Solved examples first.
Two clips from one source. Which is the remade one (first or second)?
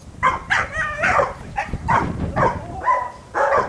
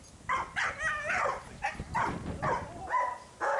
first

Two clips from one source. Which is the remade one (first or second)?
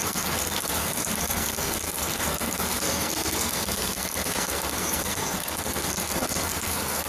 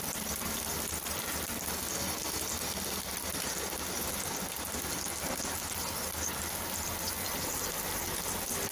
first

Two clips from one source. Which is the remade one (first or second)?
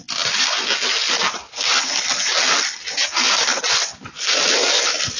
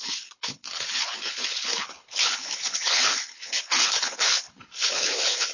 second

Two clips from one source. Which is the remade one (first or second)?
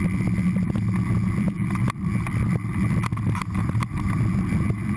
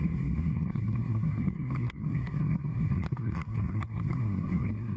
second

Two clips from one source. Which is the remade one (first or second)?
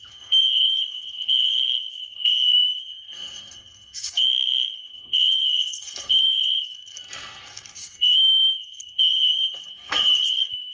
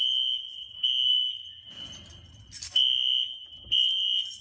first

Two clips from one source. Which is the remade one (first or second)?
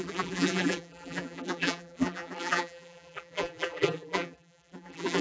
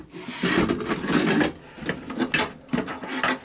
first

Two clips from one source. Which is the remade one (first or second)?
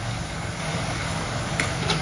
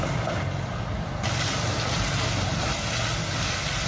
first